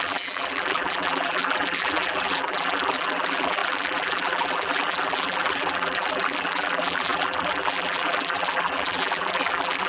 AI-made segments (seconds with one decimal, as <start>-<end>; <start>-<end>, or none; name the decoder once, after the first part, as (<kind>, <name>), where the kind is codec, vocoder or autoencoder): 0.0-9.9 (vocoder, BigVGAN v2)